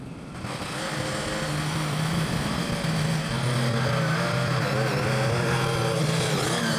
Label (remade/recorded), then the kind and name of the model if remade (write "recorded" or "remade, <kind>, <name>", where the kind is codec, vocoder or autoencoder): recorded